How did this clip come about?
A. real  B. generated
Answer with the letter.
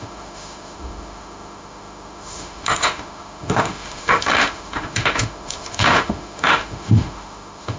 B